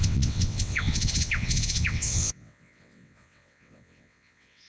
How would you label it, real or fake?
fake